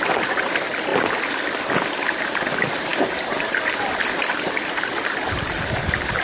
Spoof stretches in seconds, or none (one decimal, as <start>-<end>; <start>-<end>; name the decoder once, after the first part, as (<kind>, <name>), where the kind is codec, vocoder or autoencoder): none